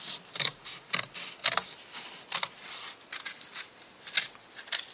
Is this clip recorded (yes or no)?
yes